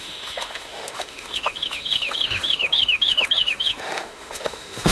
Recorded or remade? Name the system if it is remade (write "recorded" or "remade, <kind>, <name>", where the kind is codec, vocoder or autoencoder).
remade, autoencoder, DAC-VAE